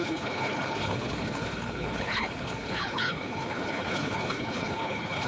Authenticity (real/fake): fake